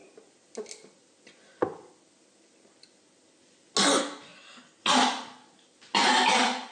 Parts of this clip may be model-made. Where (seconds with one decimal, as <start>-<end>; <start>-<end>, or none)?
none

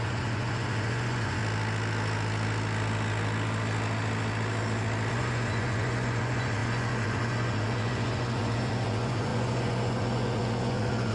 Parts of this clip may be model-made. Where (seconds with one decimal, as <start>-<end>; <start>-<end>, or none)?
0.0-1.4; 5.1-11.1

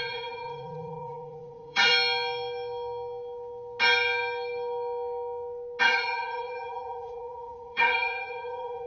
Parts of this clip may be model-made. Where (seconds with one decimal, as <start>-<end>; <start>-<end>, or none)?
0.0-1.9; 5.8-8.9

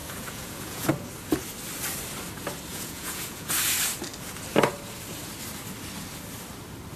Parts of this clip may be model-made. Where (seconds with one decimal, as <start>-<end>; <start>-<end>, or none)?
0.0-0.9; 2.7-3.5